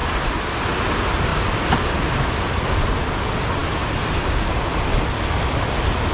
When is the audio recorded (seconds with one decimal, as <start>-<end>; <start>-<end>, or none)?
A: 0.8-6.1